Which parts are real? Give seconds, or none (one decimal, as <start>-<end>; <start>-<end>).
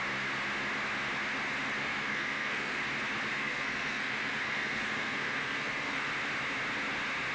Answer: 0.0-1.8; 2.8-3.3; 6.1-7.3